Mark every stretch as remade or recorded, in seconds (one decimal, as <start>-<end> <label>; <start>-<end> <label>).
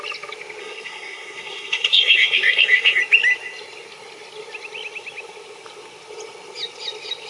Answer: 0.0-0.6 recorded; 0.6-3.0 remade; 3.0-7.3 recorded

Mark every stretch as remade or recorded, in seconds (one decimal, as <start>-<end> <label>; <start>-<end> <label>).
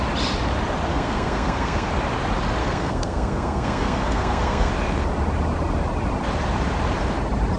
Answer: 0.0-0.9 recorded; 0.9-1.9 remade; 1.9-2.6 recorded; 2.6-4.7 remade; 4.7-7.6 recorded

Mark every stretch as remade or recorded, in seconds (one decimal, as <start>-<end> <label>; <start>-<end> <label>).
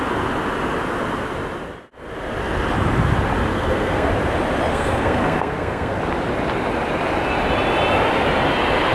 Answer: 0.0-3.5 recorded; 3.5-4.1 remade; 4.1-4.7 recorded; 4.7-6.0 remade; 6.0-8.9 recorded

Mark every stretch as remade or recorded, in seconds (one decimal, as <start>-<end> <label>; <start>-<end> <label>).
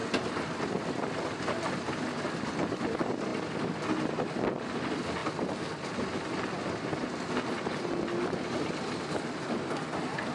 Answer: 0.0-10.3 recorded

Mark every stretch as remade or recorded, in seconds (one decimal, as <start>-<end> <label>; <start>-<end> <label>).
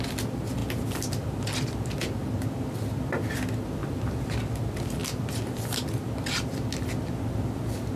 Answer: 0.0-8.0 recorded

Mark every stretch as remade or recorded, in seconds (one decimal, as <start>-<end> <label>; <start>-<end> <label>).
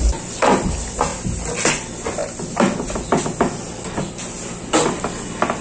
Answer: 0.0-5.6 recorded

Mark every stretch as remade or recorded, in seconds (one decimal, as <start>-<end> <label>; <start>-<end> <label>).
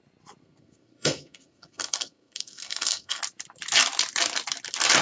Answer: 0.0-0.4 recorded; 0.4-3.2 remade; 3.2-5.0 recorded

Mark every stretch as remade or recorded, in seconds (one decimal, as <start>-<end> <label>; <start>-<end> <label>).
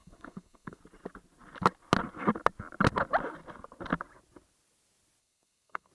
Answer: 0.0-0.8 remade; 0.8-5.2 recorded; 5.2-5.9 remade